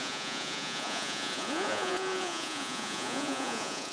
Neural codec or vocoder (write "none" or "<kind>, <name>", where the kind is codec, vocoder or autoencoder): vocoder, Vocos